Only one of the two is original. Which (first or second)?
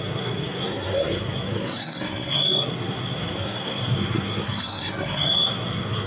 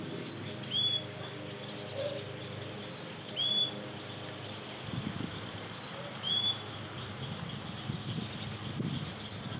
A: second